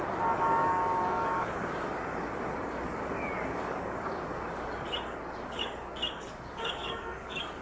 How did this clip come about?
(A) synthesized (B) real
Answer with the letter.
A